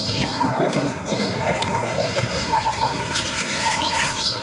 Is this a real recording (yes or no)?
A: no